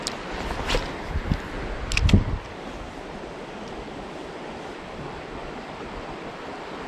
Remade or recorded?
recorded